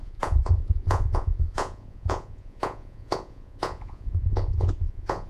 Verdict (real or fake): fake